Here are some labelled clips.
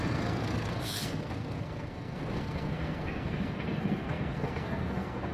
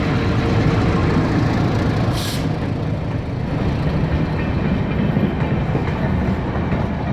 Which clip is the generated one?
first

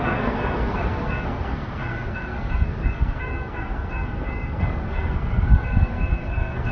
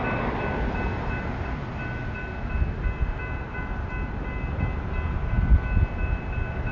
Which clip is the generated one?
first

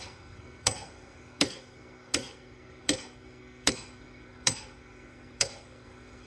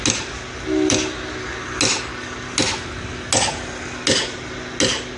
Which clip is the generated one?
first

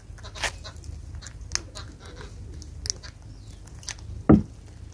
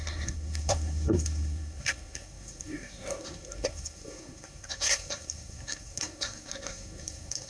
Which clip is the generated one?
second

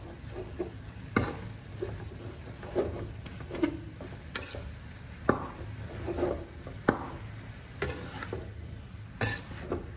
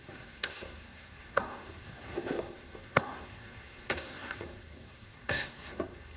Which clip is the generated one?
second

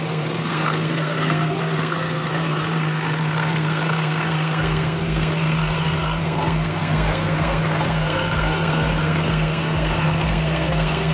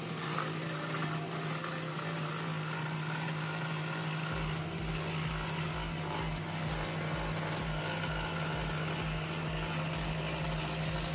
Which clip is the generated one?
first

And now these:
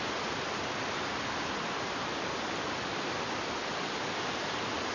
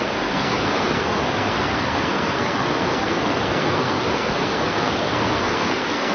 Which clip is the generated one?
second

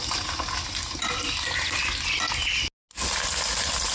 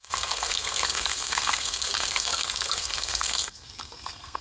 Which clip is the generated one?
second